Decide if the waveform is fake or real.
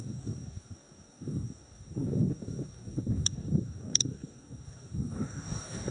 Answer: fake